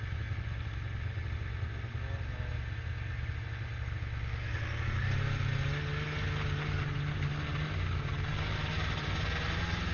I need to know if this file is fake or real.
real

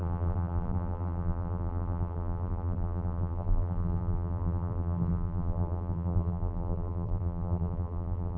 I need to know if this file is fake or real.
fake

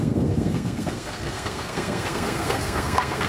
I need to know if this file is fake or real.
fake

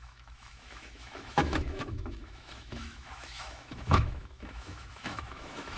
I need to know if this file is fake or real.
fake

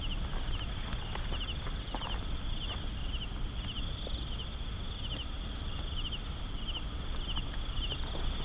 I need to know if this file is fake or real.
real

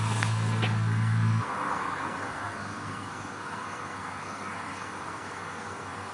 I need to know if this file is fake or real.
fake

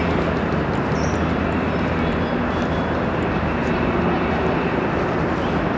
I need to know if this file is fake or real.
real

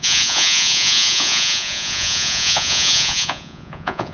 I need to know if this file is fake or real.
fake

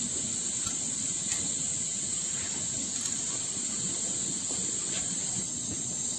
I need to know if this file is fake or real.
real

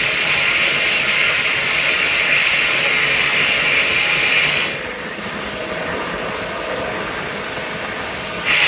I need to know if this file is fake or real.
real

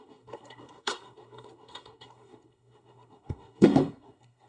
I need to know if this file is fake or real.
fake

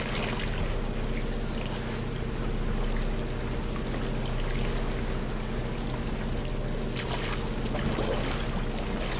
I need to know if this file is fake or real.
real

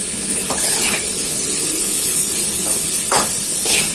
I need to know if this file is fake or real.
fake